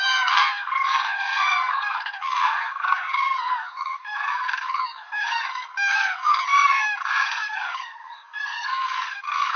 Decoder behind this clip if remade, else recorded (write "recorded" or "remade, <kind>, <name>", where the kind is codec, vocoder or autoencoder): remade, codec, SNAC